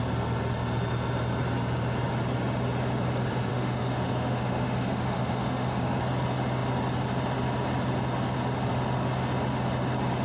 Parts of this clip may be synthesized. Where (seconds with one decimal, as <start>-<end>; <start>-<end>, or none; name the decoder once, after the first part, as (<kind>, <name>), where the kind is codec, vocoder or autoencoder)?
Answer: 3.5-6.0 (autoencoder, DAC-VAE)